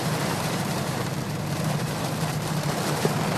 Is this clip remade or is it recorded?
remade